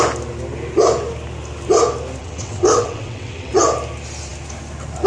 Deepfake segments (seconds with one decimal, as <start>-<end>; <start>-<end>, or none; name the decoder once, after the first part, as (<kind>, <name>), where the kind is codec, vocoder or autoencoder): 2.2-3.5 (vocoder, WaveNeXt)